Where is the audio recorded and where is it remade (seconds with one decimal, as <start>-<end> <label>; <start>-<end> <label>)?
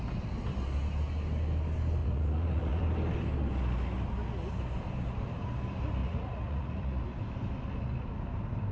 0.0-2.0 recorded; 2.0-2.8 remade; 2.8-6.0 recorded; 6.0-7.0 remade; 7.0-8.7 recorded